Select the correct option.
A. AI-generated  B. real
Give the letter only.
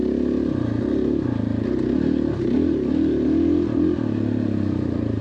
B